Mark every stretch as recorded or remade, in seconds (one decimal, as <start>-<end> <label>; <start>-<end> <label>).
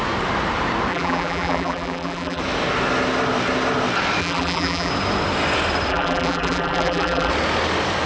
0.0-0.9 recorded; 0.9-2.4 remade; 2.4-4.2 recorded; 4.2-4.9 remade; 4.9-5.9 recorded; 5.9-7.3 remade; 7.3-8.1 recorded